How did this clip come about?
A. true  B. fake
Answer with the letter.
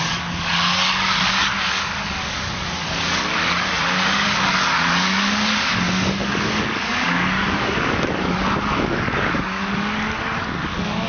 B